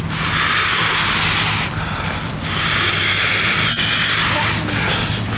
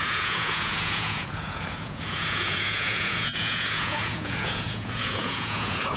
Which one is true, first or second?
first